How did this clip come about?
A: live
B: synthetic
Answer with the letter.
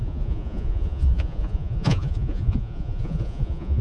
B